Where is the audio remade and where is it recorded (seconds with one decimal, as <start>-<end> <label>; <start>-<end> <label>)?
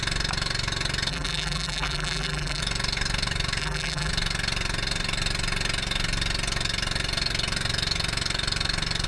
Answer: 0.0-1.1 recorded; 1.1-2.6 remade; 2.6-3.6 recorded; 3.6-4.1 remade; 4.1-9.1 recorded